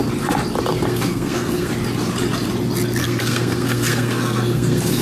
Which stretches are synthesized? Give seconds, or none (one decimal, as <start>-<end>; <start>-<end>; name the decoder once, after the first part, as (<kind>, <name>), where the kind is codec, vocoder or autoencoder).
0.7-1.7 (codec, SNAC); 3.0-5.0